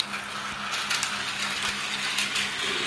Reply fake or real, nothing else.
real